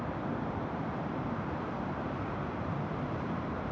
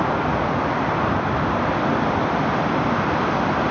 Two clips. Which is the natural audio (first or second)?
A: second